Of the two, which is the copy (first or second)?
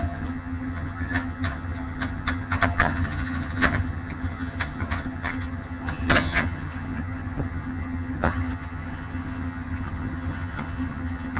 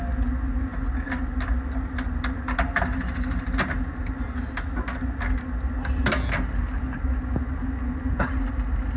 first